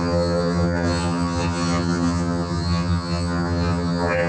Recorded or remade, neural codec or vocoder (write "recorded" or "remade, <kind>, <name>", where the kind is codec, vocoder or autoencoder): remade, vocoder, HiFi-GAN